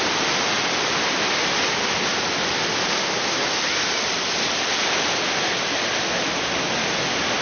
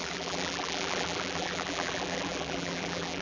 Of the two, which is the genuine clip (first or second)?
first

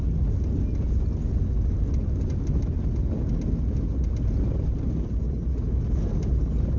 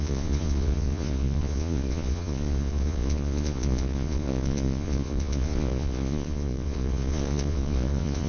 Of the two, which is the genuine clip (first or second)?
first